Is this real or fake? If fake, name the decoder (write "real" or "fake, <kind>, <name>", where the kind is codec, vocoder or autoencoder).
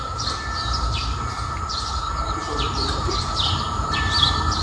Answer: fake, vocoder, BigVGAN v2